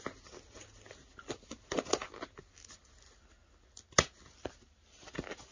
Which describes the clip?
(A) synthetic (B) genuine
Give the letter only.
B